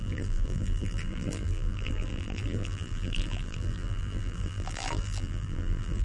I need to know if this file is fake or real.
fake